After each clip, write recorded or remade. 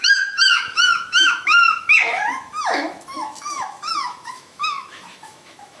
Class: remade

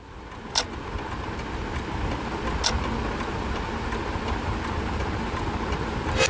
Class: recorded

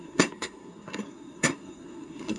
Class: remade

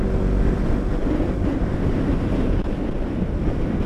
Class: recorded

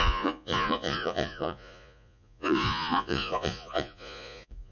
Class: remade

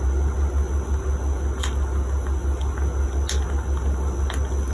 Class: recorded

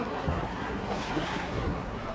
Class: remade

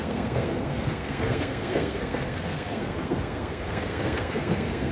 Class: remade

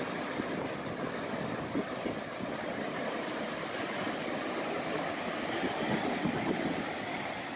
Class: recorded